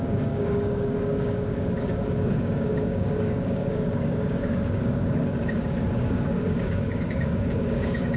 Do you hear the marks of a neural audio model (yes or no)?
yes